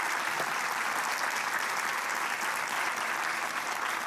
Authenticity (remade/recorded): recorded